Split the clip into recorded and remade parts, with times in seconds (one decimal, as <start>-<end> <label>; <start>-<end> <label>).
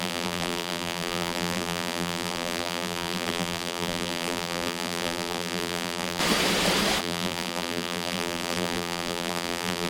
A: 0.0-6.2 remade; 6.2-7.0 recorded; 7.0-9.9 remade